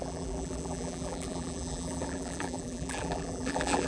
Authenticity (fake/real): fake